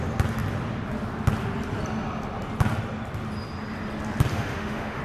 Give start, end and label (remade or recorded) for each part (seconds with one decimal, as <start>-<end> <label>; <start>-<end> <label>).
0.0-4.3 recorded; 4.3-5.0 remade